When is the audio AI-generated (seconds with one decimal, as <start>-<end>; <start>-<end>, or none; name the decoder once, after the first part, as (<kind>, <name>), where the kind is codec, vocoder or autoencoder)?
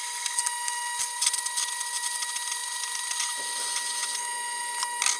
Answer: 2.6-3.4 (vocoder, BigVGAN v2)